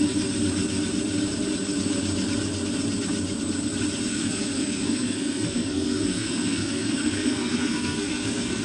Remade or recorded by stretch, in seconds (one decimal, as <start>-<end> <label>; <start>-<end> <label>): 0.0-4.1 recorded; 4.1-8.6 remade